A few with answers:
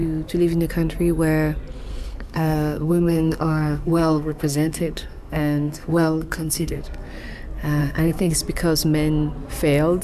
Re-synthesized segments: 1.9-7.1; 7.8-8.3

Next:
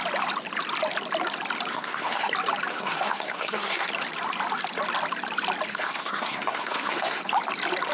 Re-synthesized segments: 1.7-2.3; 2.7-3.9; 5.7-7.2

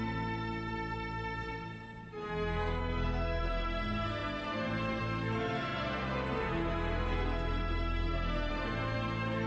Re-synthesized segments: 2.8-3.4

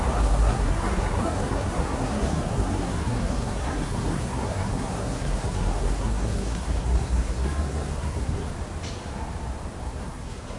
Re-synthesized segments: 0.0-8.5; 9.8-10.6

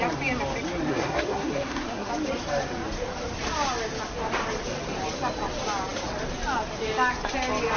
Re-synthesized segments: 0.9-2.1